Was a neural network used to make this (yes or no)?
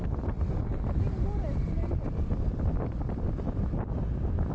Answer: no